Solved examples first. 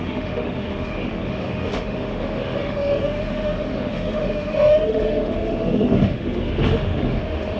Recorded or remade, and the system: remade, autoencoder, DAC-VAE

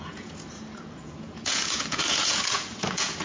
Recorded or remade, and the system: remade, vocoder, Vocos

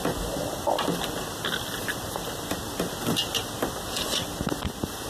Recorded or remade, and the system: recorded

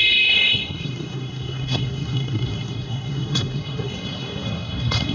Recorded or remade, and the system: remade, codec, SNAC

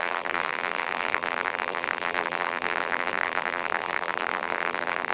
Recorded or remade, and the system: remade, vocoder, BigVGAN v2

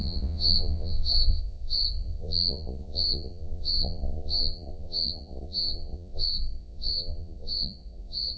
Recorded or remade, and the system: remade, vocoder, Vocos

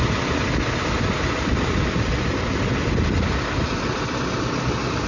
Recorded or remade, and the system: recorded